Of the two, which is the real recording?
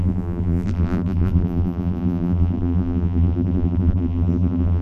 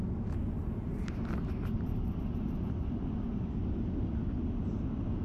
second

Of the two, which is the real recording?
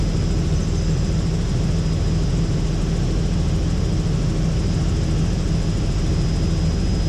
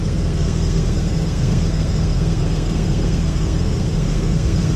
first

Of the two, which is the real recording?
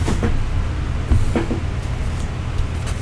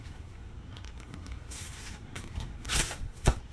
first